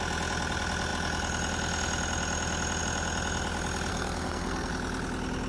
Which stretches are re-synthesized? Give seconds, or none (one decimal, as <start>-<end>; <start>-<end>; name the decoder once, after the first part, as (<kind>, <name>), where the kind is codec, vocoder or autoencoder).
3.9-4.7 (codec, SNAC)